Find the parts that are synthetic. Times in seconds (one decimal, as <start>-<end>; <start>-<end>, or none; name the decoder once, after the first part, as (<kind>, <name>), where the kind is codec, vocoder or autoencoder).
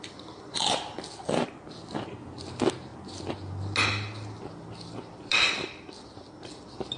none